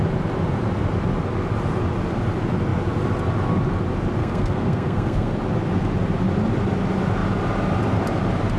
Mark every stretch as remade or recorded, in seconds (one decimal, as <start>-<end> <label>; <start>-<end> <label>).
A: 0.0-4.2 recorded; 4.2-5.4 remade; 5.4-8.6 recorded